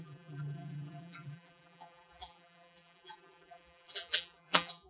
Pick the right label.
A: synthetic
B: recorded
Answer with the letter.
A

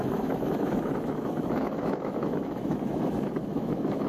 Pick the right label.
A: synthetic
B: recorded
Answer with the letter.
A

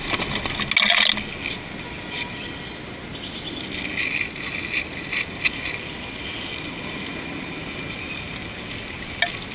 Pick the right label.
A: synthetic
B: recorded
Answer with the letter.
B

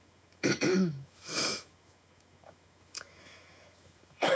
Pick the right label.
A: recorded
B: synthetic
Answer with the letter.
B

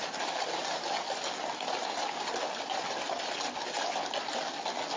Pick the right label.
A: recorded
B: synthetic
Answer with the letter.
A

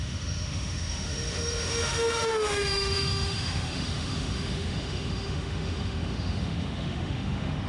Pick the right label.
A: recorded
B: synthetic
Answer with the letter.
B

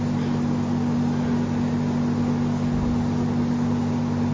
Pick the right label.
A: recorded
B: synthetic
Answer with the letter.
A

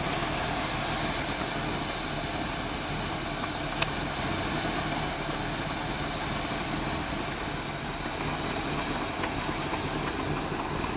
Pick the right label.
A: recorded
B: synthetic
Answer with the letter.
A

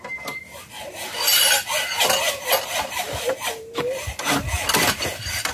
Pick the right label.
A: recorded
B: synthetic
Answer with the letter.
A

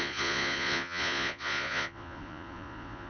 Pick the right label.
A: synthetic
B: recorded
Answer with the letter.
A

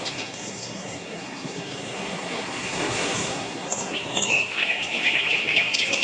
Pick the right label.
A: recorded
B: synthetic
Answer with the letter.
B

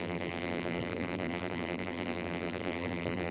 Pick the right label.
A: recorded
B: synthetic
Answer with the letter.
B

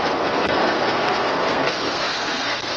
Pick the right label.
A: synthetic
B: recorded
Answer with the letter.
A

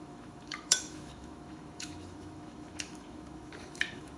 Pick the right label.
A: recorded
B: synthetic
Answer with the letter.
B